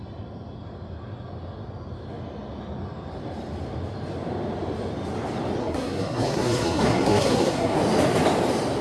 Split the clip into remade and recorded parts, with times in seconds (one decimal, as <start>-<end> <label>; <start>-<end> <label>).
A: 0.0-5.6 recorded; 5.6-7.8 remade; 7.8-8.8 recorded